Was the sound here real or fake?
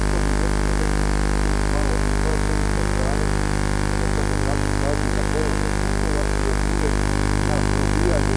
real